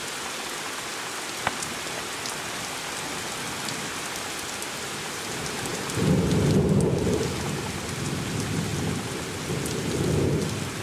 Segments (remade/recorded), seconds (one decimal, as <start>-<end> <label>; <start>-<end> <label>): 0.0-10.8 recorded